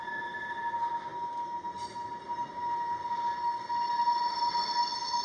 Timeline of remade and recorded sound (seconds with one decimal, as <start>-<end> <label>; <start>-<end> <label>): 0.0-5.2 recorded